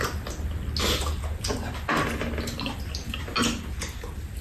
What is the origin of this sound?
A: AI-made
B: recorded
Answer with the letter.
B